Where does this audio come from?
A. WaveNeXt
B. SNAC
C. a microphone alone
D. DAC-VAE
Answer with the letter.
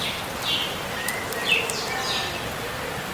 C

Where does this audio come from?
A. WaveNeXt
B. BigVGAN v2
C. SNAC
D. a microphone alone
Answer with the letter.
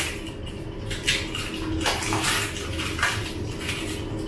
D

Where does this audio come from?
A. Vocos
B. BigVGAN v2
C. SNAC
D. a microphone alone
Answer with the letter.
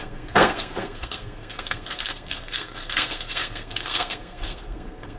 C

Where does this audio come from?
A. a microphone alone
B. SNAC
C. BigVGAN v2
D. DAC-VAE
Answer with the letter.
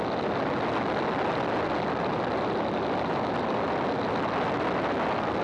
A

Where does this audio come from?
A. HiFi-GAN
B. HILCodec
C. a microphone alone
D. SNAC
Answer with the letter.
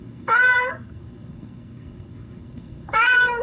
D